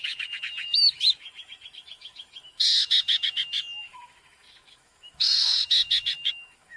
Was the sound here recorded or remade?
remade